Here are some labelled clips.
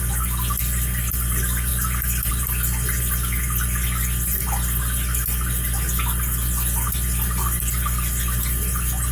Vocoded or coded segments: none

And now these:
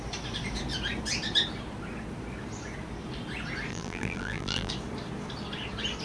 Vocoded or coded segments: 3.7-4.7 (vocoder, BigVGAN v2)

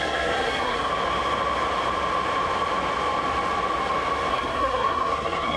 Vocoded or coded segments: 0.0-0.9 (codec, SNAC); 4.3-5.6

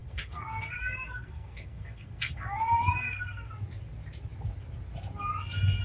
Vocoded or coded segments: 0.0-3.5 (codec, SNAC)

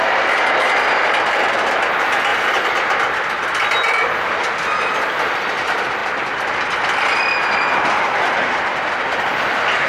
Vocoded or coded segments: 6.0-9.9 (vocoder, BigVGAN v2)

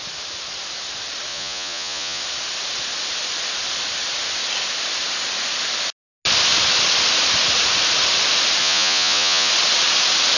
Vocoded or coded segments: 1.3-2.2 (vocoder, Vocos); 8.6-9.5

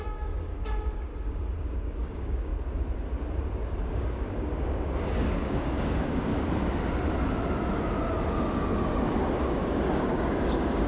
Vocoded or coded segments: 0.0-1.1 (codec, DAC); 1.6-2.5; 3.9-6.3; 9.2-10.9

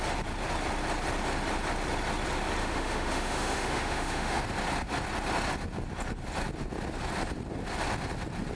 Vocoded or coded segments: 2.6-4.4 (autoencoder, DAC-VAE)